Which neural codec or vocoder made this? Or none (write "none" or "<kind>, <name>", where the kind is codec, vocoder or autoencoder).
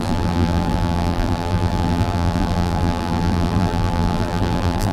vocoder, BigVGAN v2